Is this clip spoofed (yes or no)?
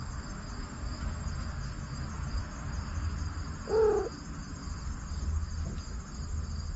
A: no